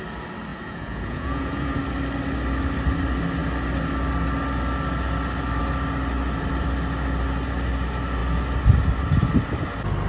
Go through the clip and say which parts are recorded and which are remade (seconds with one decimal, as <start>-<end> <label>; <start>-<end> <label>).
0.0-0.5 recorded; 0.5-1.8 remade; 1.8-10.1 recorded